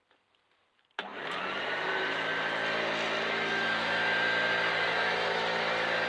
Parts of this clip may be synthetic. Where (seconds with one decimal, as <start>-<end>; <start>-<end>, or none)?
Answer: 0.0-2.3